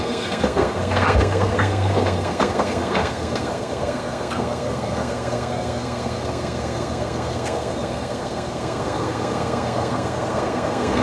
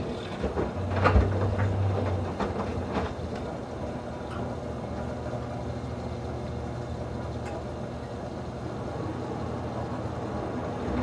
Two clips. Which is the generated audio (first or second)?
first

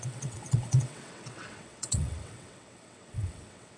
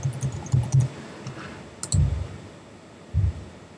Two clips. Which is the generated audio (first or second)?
first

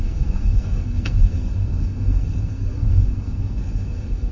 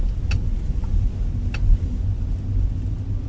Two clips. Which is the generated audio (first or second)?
first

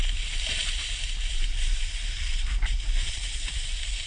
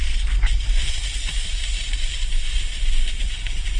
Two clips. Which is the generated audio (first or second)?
first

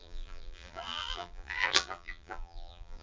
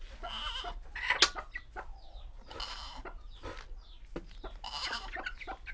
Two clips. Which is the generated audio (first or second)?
first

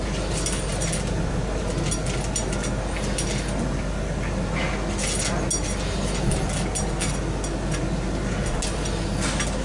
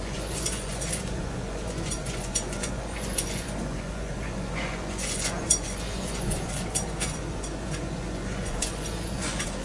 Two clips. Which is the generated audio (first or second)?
second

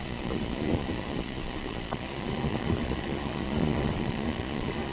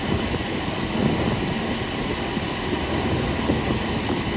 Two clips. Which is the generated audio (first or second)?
first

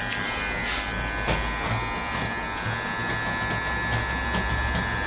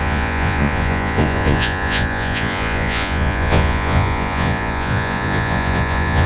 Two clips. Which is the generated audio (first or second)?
second